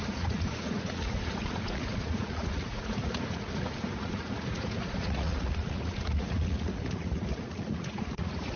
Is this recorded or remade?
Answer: remade